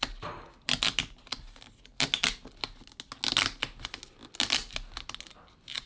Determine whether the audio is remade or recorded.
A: recorded